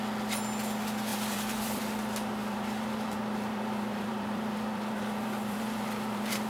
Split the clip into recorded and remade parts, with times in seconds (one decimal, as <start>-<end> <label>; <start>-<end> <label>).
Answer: 0.0-1.1 recorded; 1.1-1.8 remade; 1.8-2.4 recorded; 2.4-6.5 remade